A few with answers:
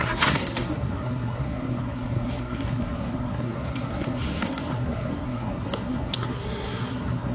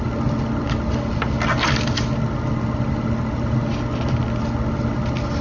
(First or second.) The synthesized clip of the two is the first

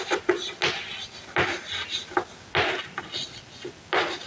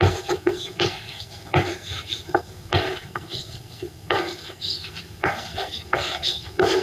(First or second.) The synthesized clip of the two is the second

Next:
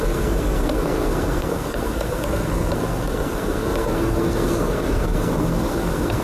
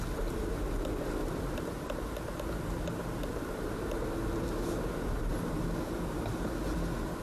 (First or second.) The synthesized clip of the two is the first